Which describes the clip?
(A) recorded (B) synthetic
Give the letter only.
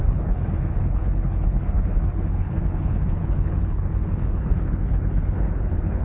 B